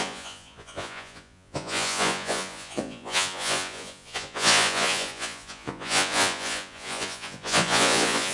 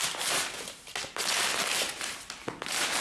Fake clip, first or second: first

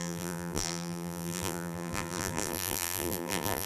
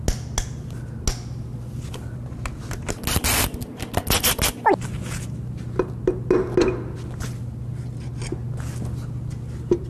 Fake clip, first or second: first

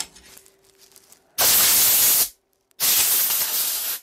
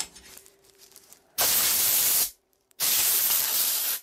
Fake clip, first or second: second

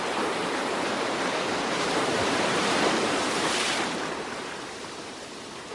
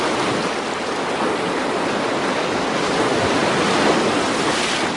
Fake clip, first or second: first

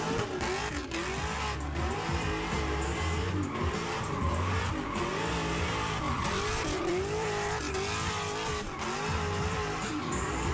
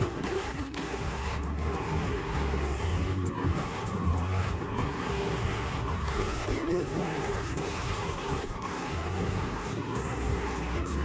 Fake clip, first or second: second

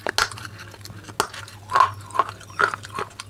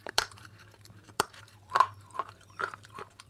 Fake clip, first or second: second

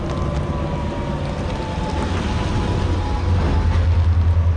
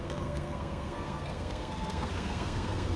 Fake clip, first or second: second